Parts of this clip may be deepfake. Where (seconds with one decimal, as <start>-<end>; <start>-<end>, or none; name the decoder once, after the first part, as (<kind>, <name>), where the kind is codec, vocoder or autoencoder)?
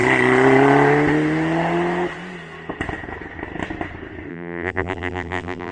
4.3-5.7 (vocoder, BigVGAN v2)